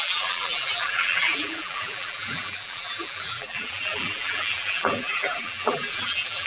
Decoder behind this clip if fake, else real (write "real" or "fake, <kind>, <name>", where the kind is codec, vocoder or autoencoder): fake, vocoder, BigVGAN v2